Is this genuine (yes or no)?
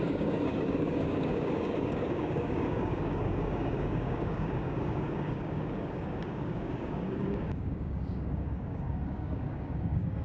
no